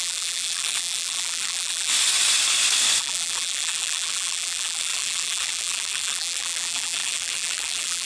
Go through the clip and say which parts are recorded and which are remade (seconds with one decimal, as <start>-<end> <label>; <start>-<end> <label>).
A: 0.0-1.9 remade; 1.9-3.0 recorded; 3.0-8.0 remade